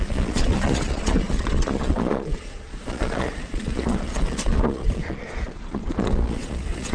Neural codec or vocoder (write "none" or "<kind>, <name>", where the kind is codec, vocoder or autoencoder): vocoder, Vocos